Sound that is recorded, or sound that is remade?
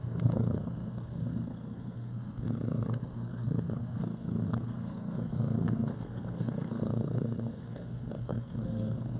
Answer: remade